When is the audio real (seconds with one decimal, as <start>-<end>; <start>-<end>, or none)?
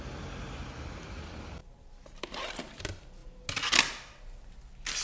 0.0-1.6; 2.8-5.0